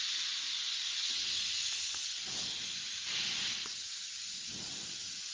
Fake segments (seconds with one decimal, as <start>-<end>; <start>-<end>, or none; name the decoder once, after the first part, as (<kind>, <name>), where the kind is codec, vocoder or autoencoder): 3.9-4.5 (codec, DAC)